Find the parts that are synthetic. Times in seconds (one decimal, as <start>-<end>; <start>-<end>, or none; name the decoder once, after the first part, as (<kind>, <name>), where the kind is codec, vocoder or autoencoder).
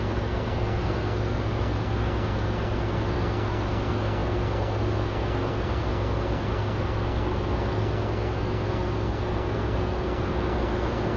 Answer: 0.0-11.2 (codec, SNAC)